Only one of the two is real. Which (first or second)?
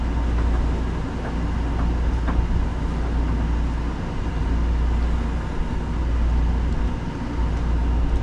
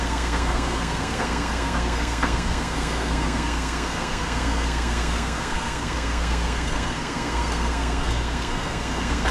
first